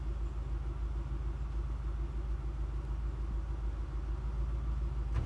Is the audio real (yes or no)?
yes